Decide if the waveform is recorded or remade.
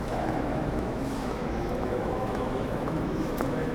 remade